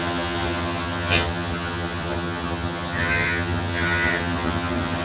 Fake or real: fake